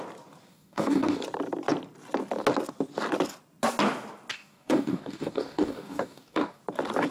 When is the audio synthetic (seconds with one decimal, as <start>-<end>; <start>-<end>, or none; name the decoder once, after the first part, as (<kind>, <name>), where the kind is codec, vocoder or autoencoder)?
0.5-1.2 (codec, DAC); 4.3-6.6

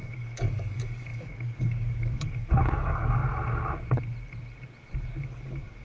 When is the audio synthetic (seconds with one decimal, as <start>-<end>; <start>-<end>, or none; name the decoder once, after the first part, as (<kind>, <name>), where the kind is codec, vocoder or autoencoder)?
0.0-3.2 (codec, DAC); 5.2-5.8

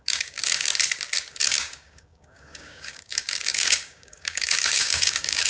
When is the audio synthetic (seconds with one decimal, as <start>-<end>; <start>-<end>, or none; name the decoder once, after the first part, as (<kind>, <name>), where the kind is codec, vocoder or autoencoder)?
0.0-0.7 (codec, DAC); 1.3-5.5

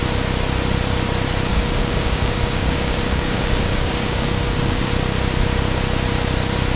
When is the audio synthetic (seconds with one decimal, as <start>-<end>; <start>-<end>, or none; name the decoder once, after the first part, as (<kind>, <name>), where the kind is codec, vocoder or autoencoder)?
1.5-4.9 (codec, DAC)